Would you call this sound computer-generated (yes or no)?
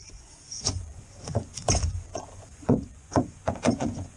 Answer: yes